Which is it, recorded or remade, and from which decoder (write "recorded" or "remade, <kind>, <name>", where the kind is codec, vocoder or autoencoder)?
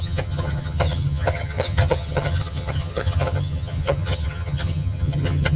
remade, vocoder, HiFi-GAN